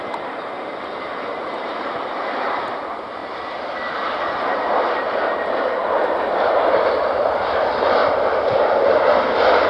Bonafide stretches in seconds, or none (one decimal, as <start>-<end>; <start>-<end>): 8.0-9.7